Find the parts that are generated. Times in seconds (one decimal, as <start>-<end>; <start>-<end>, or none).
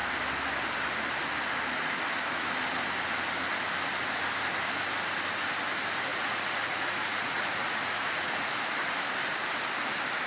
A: 6.1-8.5